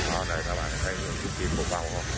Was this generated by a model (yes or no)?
no